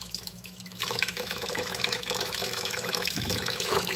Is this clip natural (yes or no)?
no